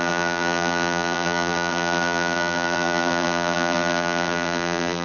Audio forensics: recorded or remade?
remade